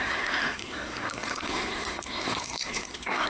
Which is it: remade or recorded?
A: remade